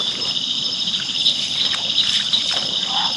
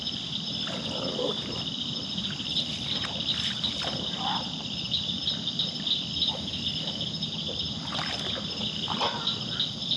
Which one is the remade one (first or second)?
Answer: first